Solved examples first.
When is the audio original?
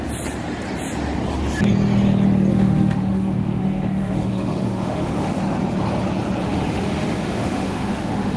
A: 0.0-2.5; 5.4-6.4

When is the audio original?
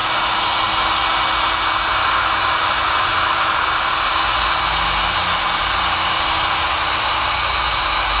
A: 0.0-8.2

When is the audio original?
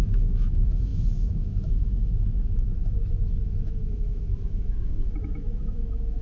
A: none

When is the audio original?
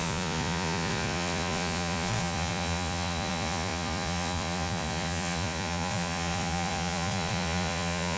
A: none